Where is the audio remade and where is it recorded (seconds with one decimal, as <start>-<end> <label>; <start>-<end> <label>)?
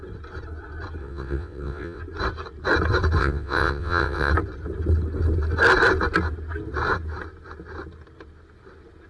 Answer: 0.0-1.0 recorded; 1.0-2.0 remade; 2.0-3.2 recorded; 3.2-4.3 remade; 4.3-9.1 recorded